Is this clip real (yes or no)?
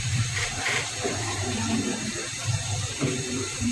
no